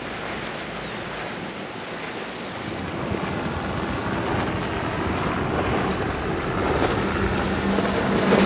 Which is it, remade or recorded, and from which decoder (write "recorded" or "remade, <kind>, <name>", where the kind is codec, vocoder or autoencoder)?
recorded